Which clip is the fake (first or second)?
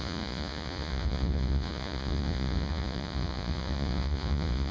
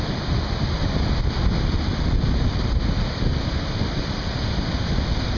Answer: first